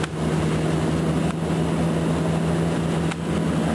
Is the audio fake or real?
real